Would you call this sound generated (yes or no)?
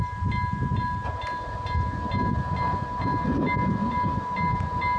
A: no